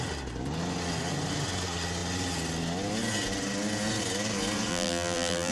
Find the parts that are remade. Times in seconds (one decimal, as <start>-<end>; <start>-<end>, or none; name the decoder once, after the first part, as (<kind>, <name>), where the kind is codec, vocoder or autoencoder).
4.7-5.5 (vocoder, BigVGAN v2)